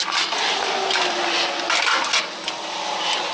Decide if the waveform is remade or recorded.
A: recorded